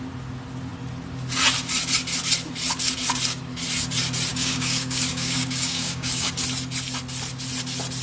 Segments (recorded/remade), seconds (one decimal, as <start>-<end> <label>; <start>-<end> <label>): 0.0-4.3 recorded; 4.3-6.3 remade; 6.3-8.0 recorded